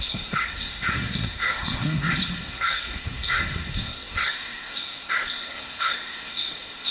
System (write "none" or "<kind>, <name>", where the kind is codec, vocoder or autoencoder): codec, SNAC